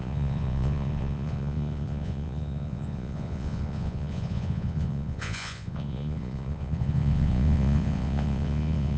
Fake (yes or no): yes